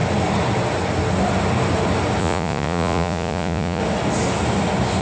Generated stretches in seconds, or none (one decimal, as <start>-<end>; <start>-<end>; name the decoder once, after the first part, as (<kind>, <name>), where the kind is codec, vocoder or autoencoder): 2.2-3.8 (vocoder, Vocos)